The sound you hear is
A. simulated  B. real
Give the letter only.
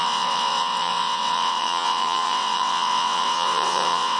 A